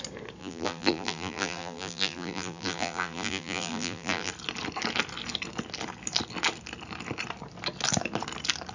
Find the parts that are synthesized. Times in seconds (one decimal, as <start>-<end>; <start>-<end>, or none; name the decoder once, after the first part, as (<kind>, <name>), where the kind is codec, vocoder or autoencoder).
0.4-4.3 (vocoder, BigVGAN v2)